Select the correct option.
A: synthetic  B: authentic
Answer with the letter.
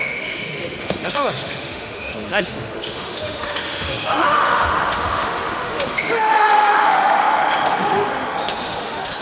A